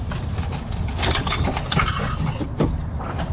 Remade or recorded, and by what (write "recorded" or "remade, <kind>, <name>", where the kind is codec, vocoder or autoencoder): recorded